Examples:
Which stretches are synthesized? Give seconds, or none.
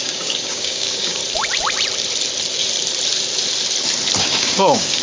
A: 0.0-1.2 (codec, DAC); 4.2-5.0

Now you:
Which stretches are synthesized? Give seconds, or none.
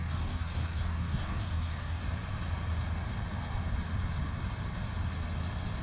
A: 0.0-2.0 (codec, DAC)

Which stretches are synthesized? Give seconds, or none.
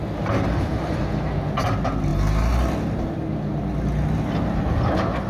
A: none